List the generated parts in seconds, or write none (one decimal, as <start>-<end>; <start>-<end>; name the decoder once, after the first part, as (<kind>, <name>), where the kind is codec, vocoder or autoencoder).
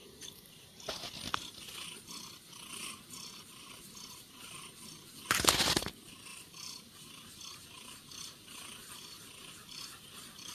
0.0-1.0 (vocoder, BigVGAN v2); 6.3-7.3